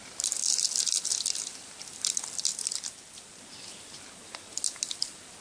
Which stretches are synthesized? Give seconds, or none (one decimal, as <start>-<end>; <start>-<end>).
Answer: none